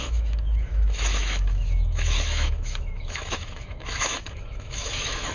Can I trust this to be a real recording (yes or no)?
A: no